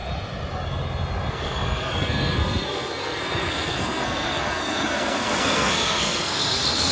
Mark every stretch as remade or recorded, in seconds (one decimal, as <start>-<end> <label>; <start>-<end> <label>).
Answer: 0.0-1.3 recorded; 1.3-6.9 remade